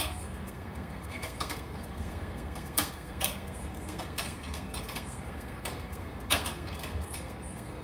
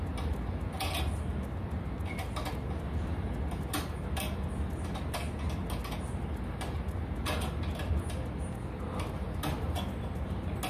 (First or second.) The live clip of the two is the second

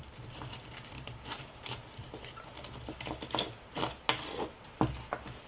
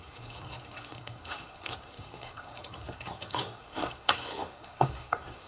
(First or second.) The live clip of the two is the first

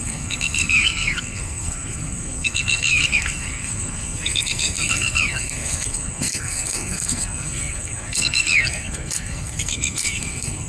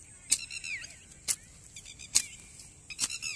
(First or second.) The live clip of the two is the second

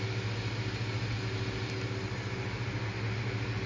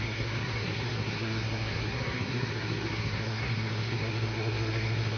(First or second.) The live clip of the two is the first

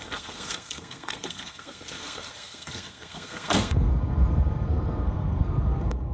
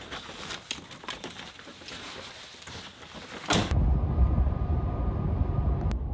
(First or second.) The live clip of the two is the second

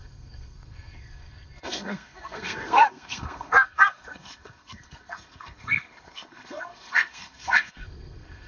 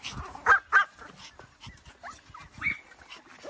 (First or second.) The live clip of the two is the second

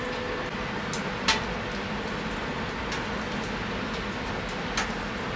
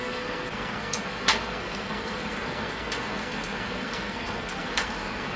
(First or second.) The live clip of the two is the first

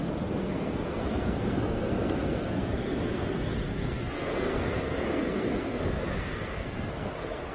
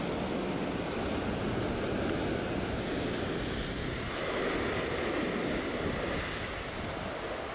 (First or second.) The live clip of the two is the second